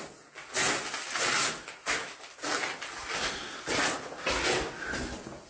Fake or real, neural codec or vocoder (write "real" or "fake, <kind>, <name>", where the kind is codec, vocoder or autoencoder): real